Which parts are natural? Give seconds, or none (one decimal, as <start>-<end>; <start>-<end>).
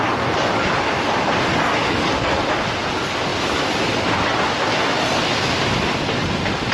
0.0-1.8; 2.4-6.7